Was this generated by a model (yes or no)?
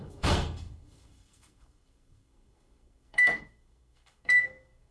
yes